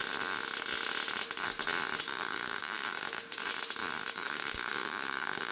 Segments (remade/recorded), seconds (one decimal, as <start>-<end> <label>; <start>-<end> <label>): 0.0-2.0 recorded; 2.0-3.4 remade; 3.4-4.1 recorded; 4.1-5.5 remade